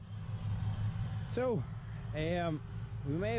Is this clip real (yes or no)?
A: yes